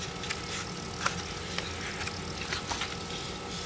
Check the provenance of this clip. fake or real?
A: real